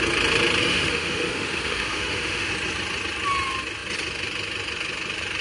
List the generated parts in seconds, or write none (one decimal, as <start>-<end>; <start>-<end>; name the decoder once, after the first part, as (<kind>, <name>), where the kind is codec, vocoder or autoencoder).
0.6-2.5 (autoencoder, DAC-VAE)